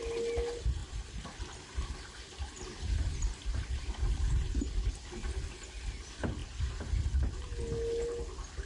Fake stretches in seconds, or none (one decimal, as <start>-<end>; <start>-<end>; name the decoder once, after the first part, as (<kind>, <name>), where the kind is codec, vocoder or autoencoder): 0.8-4.5 (vocoder, BigVGAN v2)